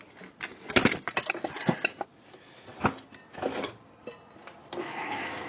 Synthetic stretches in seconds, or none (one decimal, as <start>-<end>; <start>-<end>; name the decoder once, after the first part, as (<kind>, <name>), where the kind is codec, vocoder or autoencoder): 4.8-5.5 (autoencoder, DAC-VAE)